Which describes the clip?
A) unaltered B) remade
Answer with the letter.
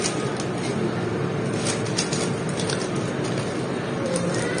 A